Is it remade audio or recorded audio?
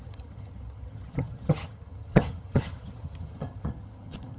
remade